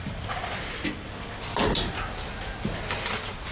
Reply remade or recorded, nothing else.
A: recorded